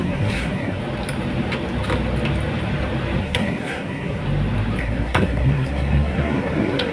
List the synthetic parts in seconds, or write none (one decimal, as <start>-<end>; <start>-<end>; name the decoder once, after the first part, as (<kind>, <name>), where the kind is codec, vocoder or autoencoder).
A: 0.0-0.8 (codec, SNAC); 3.2-4.2; 4.8-6.9